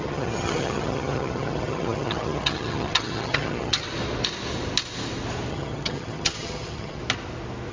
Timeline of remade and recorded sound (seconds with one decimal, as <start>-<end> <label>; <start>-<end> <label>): 0.0-3.8 remade; 3.8-5.5 recorded; 5.5-7.0 remade; 7.0-7.7 recorded